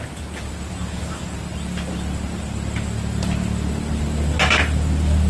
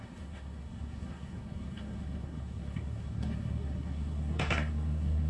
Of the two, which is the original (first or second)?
first